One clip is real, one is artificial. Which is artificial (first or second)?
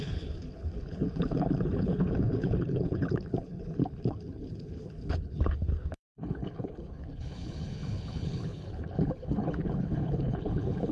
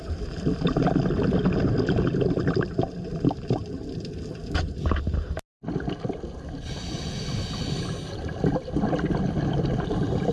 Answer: first